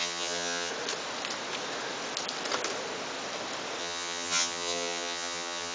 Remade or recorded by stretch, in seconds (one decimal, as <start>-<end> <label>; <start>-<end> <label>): 0.0-0.7 remade; 0.7-3.8 recorded; 3.8-5.7 remade